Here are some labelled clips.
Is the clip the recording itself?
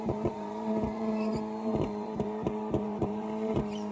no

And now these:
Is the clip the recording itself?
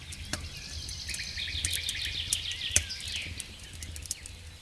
yes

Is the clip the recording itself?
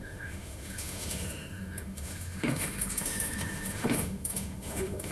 no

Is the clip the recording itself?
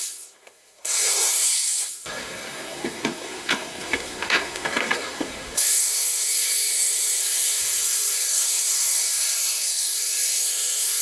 no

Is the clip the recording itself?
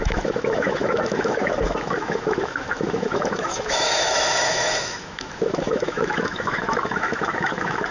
no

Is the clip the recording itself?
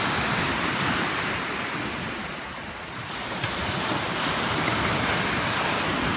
no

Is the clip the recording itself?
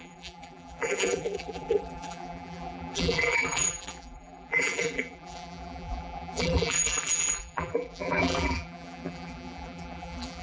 no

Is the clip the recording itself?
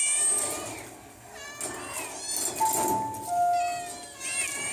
yes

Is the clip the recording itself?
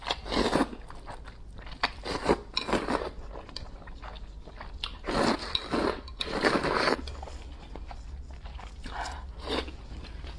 yes